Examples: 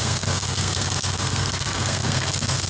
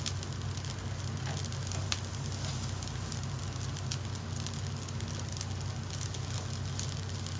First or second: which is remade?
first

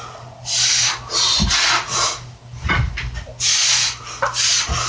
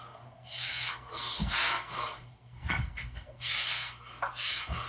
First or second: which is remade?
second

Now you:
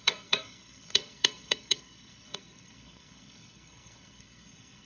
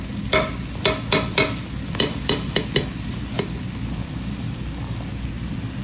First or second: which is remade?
first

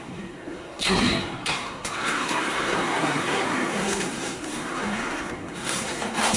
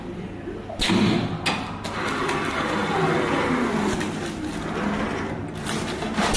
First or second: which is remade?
first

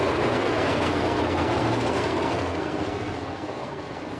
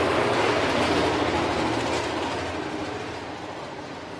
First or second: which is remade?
first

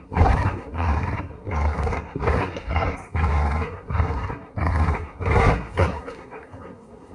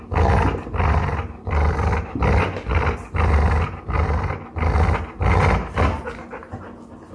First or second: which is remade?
first